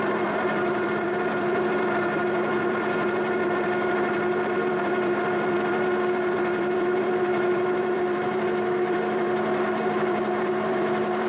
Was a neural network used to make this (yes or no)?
yes